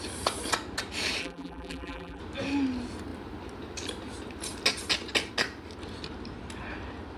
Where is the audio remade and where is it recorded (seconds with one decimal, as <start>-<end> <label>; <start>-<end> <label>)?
0.0-1.2 recorded; 1.2-2.2 remade; 2.2-7.2 recorded